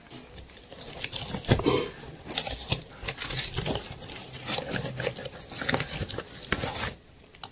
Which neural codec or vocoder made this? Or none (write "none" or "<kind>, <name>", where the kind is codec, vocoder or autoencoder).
none